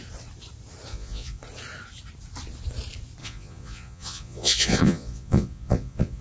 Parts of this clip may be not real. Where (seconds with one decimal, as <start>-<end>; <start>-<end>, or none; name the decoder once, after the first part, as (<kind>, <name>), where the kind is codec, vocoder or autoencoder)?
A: 0.9-1.4 (vocoder, Vocos); 3.2-6.2